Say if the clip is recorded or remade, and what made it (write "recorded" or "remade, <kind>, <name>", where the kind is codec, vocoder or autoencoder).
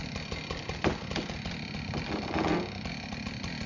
recorded